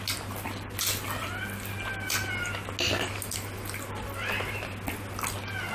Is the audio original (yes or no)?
yes